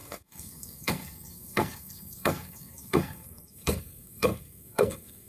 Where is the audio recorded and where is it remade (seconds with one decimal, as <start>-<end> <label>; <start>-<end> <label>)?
0.0-5.3 remade